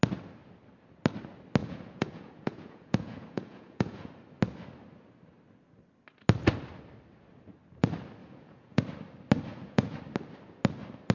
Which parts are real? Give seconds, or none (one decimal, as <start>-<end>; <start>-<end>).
0.0-1.6; 4.1-8.2; 8.8-9.5; 10.0-11.1

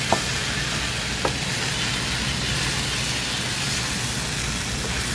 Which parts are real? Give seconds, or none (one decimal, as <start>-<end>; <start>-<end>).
0.0-5.1

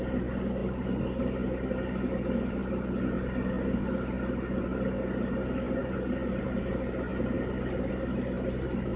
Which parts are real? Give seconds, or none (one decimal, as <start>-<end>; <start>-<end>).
0.0-9.0

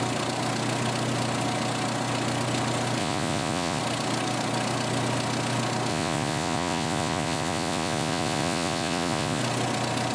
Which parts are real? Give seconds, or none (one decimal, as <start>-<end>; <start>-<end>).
0.0-3.0; 3.8-5.9; 9.4-10.1

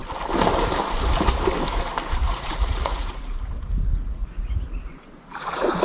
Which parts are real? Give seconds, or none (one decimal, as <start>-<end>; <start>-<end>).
0.0-2.2; 3.2-3.9

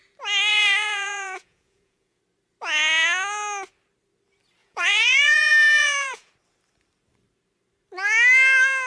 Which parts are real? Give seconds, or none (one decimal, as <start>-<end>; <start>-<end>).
0.0-0.5; 2.2-4.6; 6.3-8.9

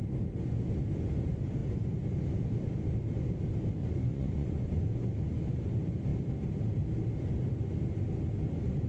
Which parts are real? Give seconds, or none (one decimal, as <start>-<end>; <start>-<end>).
0.0-3.8; 5.0-8.9

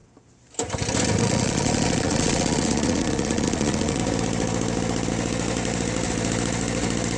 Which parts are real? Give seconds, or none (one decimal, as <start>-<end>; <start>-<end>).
0.0-1.2; 4.0-7.2